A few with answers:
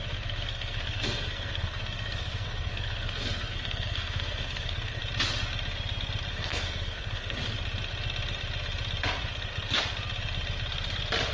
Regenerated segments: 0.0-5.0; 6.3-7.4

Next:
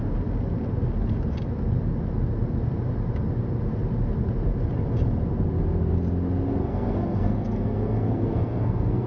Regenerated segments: 6.6-9.1